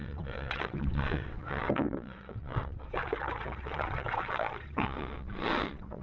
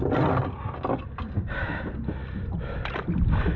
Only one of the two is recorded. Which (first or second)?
second